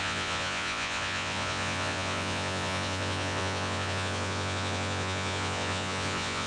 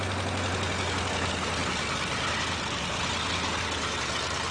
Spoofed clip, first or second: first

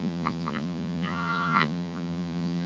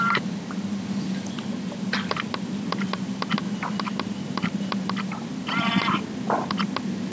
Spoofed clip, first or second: first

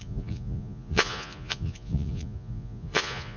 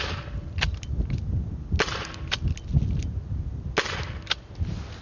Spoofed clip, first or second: first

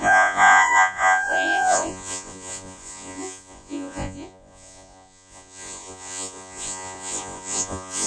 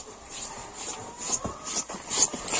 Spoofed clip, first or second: first